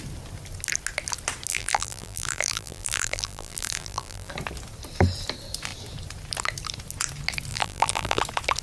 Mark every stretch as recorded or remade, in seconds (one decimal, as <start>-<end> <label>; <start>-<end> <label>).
0.0-1.5 recorded; 1.5-4.3 remade; 4.3-7.5 recorded; 7.5-8.2 remade; 8.2-8.6 recorded